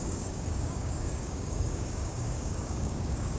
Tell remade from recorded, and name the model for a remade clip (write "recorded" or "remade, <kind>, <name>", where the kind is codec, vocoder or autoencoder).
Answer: remade, codec, DAC